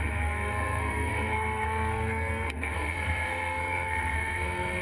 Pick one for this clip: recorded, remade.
remade